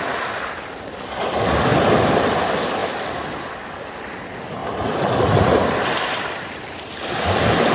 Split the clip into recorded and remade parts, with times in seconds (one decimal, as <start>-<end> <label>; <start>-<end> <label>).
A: 0.0-1.7 recorded; 1.7-2.3 remade; 2.3-2.8 recorded; 2.8-3.5 remade; 3.5-4.6 recorded; 4.6-6.6 remade; 6.6-7.7 recorded